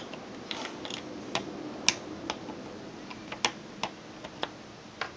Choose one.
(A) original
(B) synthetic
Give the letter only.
A